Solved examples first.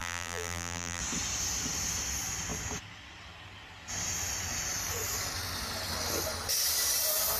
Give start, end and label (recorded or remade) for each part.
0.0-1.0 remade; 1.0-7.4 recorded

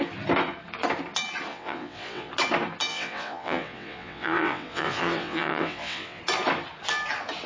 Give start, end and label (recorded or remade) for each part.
0.0-1.5 recorded; 1.5-2.3 remade; 2.3-2.9 recorded; 2.9-6.2 remade; 6.2-7.5 recorded

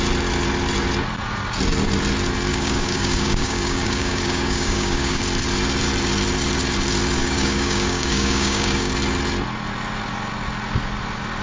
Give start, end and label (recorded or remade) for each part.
0.0-2.5 recorded; 2.5-5.2 remade; 5.2-7.2 recorded; 7.2-8.9 remade; 8.9-11.4 recorded

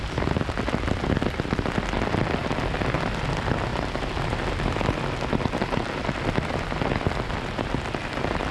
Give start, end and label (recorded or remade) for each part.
0.0-8.5 recorded

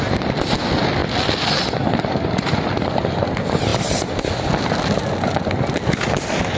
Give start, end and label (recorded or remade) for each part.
0.0-1.0 recorded; 1.0-3.1 remade; 3.1-6.6 recorded

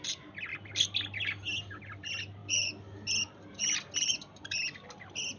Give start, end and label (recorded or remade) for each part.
0.0-2.4 recorded; 2.4-5.0 remade; 5.0-5.4 recorded